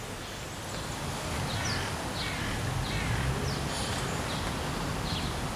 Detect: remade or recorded recorded